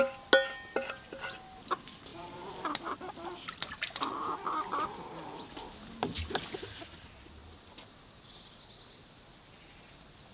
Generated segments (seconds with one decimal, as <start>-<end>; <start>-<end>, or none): none